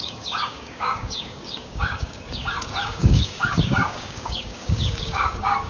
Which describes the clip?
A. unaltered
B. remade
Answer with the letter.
B